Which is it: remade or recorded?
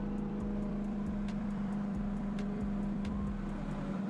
remade